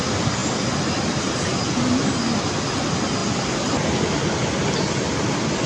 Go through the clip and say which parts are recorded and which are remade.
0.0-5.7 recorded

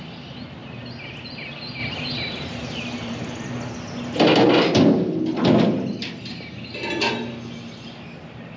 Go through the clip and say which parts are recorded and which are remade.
0.0-0.6 recorded; 0.6-1.4 remade; 1.4-8.6 recorded

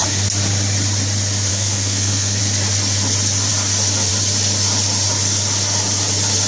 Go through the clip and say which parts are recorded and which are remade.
0.0-1.5 recorded; 1.5-2.4 remade; 2.4-6.5 recorded

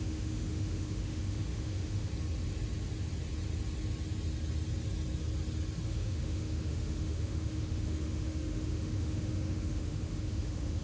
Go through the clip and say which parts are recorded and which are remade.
0.0-2.1 remade; 2.1-5.9 recorded; 5.9-10.8 remade